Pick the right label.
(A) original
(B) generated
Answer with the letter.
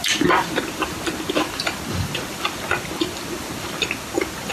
A